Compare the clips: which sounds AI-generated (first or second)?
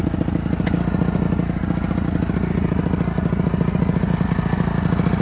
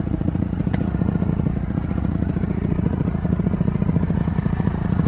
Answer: second